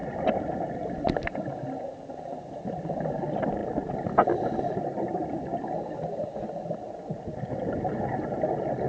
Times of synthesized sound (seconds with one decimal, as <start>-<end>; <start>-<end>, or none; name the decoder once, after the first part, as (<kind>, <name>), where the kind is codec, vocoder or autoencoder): none